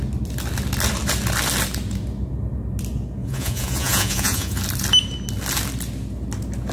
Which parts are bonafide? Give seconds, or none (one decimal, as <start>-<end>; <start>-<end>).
0.0-3.2; 4.6-6.7